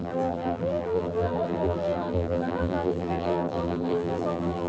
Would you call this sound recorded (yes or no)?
no